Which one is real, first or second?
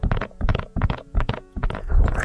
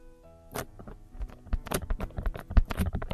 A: second